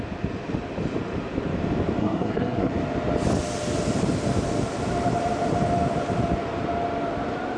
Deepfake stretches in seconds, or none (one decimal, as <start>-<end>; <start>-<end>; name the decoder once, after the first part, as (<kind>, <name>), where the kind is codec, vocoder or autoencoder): 2.0-2.7 (codec, SNAC)